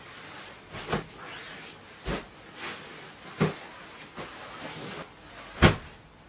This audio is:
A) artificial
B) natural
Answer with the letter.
B